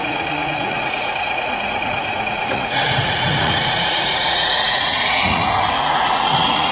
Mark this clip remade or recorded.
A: remade